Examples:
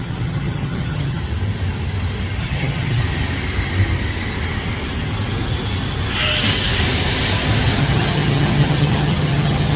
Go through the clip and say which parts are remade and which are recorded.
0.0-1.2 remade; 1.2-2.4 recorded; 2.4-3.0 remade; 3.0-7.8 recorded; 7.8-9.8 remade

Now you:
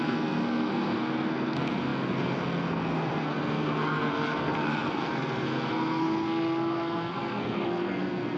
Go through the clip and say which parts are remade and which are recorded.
0.0-8.4 remade

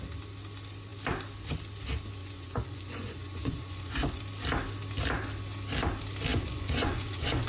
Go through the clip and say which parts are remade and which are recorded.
0.0-2.2 recorded; 2.2-4.2 remade; 4.2-6.3 recorded; 6.3-7.5 remade

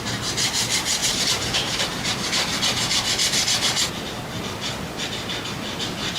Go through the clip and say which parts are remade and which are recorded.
0.0-1.0 recorded; 1.0-1.8 remade; 1.8-6.2 recorded